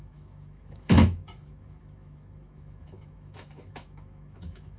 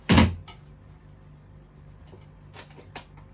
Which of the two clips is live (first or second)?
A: second